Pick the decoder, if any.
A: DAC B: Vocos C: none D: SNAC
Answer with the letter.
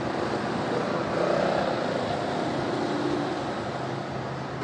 C